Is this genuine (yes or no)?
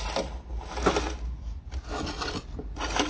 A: yes